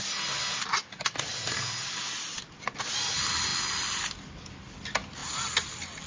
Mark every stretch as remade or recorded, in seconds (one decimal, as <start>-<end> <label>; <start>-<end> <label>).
0.0-6.1 recorded